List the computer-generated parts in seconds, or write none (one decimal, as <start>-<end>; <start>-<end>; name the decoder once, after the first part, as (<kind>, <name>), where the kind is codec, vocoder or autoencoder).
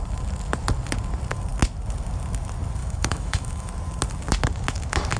2.8-3.7 (autoencoder, DAC-VAE)